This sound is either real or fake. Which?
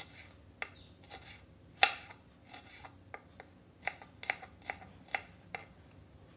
real